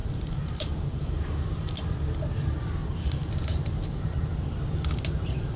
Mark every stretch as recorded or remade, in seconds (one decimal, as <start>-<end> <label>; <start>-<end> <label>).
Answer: 0.0-1.7 remade; 1.7-2.8 recorded; 2.8-3.3 remade; 3.3-5.6 recorded